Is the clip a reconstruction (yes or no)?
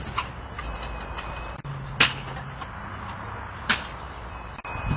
no